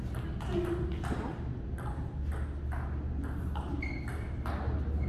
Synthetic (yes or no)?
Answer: no